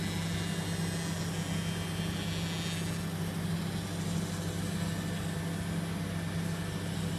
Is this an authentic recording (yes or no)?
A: yes